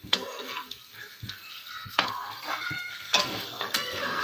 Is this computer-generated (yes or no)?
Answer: yes